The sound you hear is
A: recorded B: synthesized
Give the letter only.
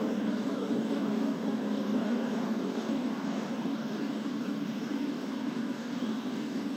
B